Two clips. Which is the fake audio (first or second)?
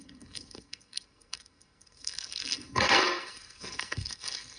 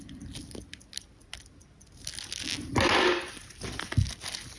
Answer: first